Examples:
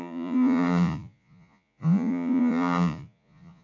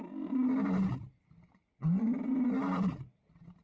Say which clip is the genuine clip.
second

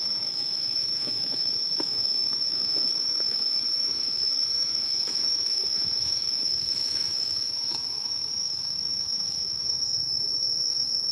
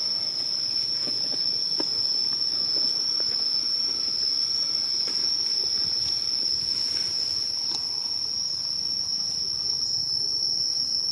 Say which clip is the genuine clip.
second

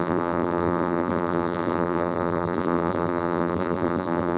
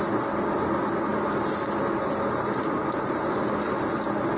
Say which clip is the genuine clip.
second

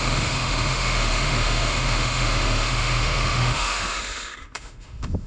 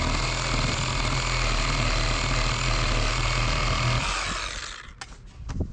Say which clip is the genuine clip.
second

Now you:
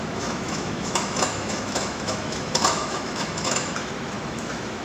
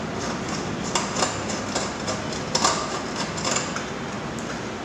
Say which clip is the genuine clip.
second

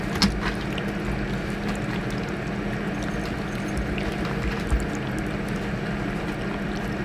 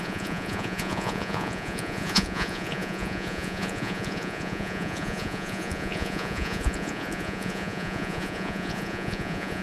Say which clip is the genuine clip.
first